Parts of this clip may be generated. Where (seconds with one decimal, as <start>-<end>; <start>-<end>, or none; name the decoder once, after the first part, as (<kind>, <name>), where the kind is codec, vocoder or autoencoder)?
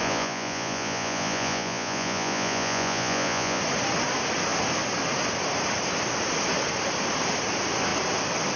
0.0-3.6 (vocoder, Vocos)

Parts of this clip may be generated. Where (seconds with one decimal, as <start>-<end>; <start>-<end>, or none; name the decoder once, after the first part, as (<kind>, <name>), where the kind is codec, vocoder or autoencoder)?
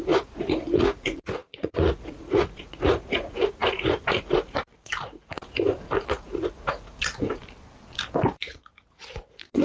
0.0-7.4 (vocoder, Vocos); 8.3-9.6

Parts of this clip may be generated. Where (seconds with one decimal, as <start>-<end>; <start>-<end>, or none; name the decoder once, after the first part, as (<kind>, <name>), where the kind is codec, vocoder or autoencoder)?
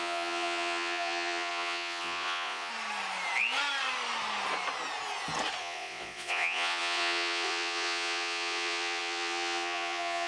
0.0-2.7 (vocoder, Vocos); 5.6-10.3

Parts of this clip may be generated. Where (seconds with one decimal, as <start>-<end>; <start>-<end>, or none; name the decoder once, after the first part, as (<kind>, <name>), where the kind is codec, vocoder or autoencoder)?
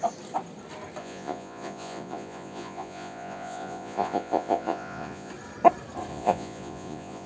1.0-5.3 (vocoder, Vocos); 6.1-7.3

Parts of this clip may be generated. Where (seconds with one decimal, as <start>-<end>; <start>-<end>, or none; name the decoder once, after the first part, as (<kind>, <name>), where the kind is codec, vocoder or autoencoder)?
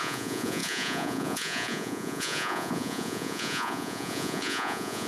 0.0-5.1 (vocoder, Vocos)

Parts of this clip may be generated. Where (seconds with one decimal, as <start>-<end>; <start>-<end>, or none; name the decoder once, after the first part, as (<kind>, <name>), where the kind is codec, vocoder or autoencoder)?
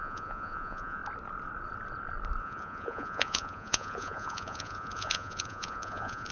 0.0-1.0 (vocoder, Vocos); 2.4-6.3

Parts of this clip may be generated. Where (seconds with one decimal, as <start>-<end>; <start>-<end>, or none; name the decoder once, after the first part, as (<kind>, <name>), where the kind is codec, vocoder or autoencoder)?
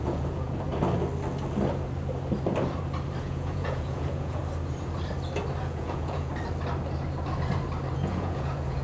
0.0-0.7 (vocoder, Vocos); 3.2-4.4; 5.6-6.3; 7.9-8.8